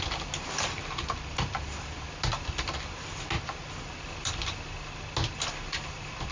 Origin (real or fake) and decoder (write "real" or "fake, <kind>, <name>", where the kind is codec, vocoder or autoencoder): real